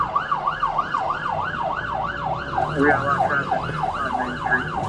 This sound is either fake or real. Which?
real